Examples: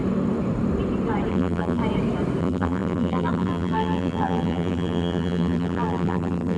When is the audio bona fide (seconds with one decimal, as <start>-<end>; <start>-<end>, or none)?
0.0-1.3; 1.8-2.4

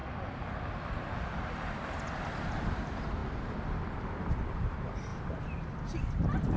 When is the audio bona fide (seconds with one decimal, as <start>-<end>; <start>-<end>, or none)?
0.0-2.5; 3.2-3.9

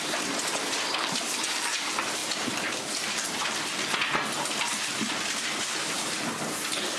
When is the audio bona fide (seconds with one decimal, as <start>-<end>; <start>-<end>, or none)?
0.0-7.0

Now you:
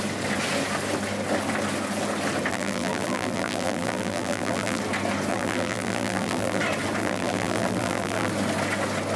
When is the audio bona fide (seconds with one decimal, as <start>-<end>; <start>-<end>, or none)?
0.0-2.5; 4.8-5.3; 6.6-7.0; 8.3-9.2

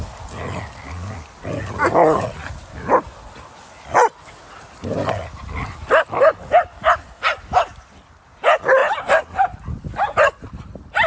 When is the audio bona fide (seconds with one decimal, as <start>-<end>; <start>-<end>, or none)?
0.0-11.1

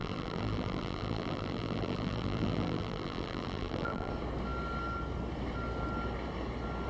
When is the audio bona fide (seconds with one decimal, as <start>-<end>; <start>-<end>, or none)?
4.1-6.9

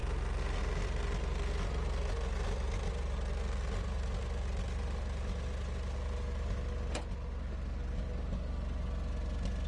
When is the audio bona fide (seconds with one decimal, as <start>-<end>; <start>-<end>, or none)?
0.0-9.7